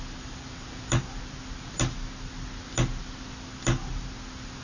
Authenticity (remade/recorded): recorded